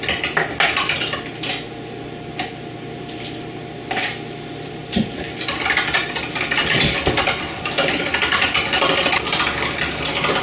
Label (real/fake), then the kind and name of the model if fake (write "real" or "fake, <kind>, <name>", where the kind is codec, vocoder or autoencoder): real